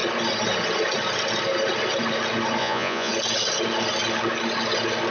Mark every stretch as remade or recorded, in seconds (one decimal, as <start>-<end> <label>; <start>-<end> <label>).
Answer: 0.0-2.6 recorded; 2.6-3.1 remade; 3.1-5.1 recorded